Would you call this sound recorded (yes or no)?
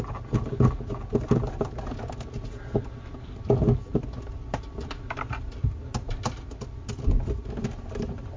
yes